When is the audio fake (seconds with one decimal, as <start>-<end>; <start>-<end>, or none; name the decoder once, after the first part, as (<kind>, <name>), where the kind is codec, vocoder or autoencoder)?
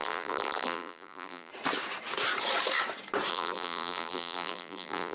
0.0-1.5 (vocoder, BigVGAN v2); 3.3-5.1